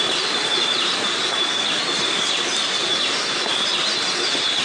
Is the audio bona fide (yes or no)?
yes